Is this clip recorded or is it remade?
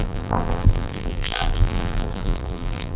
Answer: remade